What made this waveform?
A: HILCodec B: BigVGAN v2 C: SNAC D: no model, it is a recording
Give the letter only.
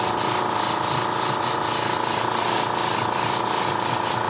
B